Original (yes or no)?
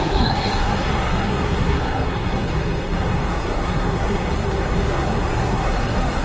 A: no